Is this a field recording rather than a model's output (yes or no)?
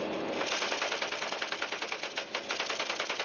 yes